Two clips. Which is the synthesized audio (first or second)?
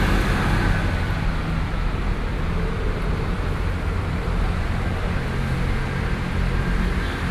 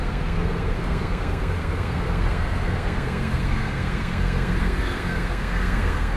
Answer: second